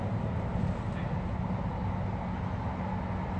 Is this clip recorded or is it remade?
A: recorded